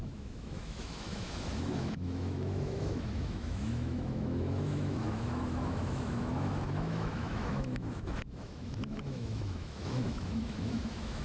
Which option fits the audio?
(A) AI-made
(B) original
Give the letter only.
A